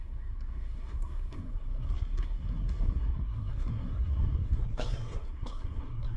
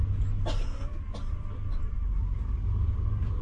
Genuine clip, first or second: second